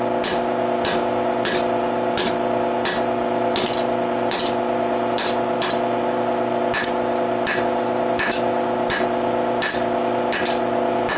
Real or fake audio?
real